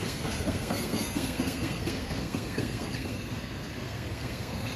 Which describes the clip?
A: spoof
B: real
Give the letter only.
A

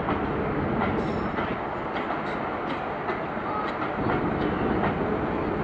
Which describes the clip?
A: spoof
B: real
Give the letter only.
B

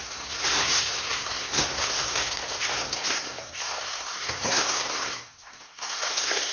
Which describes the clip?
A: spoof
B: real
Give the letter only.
A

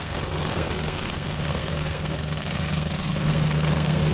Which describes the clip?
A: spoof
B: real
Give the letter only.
A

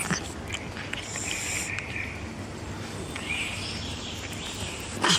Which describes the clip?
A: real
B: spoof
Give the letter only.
A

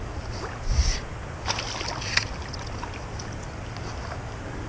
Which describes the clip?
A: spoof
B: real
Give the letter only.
B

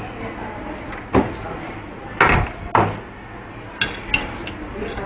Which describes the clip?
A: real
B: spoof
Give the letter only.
A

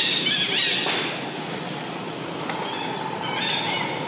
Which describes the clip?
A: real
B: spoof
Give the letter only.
A